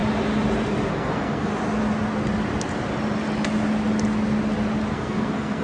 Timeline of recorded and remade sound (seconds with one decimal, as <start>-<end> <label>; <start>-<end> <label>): 0.0-0.9 recorded; 0.9-1.5 remade; 1.5-4.9 recorded; 4.9-5.6 remade